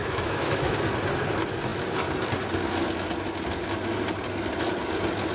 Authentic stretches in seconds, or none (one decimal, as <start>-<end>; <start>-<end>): 0.8-5.3